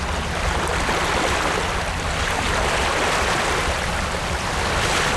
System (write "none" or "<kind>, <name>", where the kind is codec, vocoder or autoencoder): none